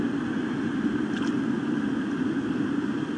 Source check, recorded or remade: recorded